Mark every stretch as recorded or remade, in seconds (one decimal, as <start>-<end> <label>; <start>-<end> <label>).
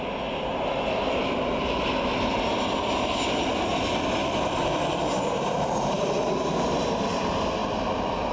0.0-8.3 recorded